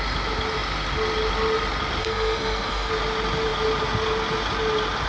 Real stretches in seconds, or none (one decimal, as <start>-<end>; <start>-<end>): 0.0-2.0; 2.9-5.1